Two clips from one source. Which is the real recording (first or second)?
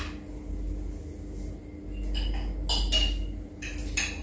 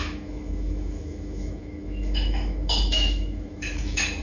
first